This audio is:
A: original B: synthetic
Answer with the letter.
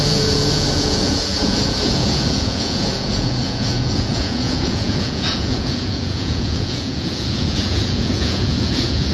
B